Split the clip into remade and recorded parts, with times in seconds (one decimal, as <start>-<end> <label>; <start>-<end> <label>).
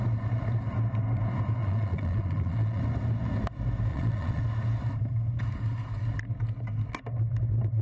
0.0-1.6 recorded; 1.6-2.8 remade; 2.8-3.9 recorded; 3.9-4.4 remade; 4.4-7.8 recorded